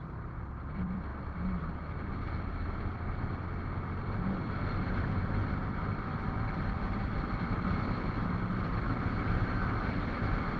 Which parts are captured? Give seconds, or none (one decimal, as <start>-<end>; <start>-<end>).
1.1-4.8